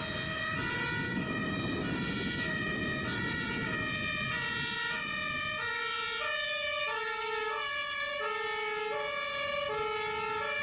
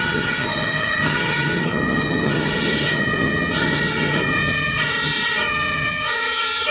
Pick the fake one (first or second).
second